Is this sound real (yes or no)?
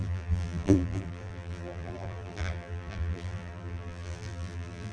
no